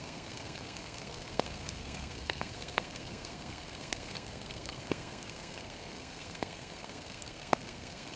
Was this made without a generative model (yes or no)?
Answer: no